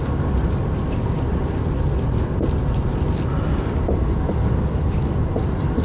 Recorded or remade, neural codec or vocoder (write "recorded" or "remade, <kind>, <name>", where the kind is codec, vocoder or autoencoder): recorded